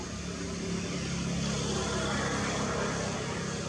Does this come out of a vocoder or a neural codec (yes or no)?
no